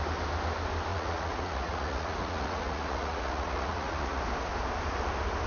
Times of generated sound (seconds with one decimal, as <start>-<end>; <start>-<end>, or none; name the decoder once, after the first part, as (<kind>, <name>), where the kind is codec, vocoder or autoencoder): 0.9-4.2 (vocoder, Vocos)